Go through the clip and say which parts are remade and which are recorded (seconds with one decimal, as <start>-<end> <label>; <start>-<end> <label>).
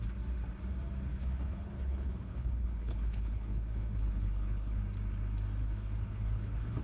0.0-1.1 recorded; 1.1-4.8 remade; 4.8-5.6 recorded; 5.6-6.8 remade